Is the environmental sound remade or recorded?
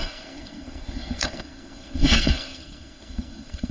remade